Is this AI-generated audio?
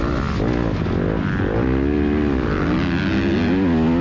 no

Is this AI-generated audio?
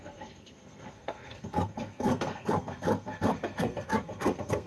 yes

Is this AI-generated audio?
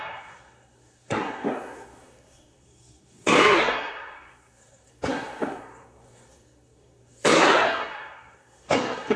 yes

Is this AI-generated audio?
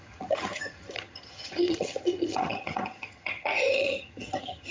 yes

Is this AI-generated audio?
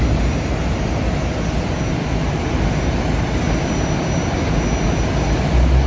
no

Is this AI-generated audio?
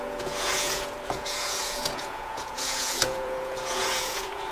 yes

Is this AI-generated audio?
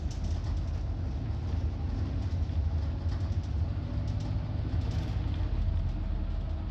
no